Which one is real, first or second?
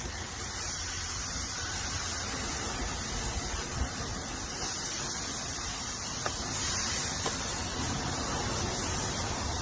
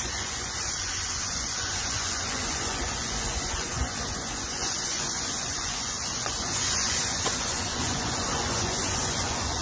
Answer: first